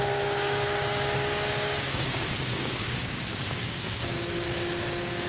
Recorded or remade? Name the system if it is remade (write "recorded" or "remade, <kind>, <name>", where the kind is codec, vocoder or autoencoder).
remade, codec, DAC